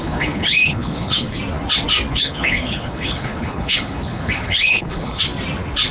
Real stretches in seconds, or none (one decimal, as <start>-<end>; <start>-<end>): 1.4-2.1; 5.2-5.9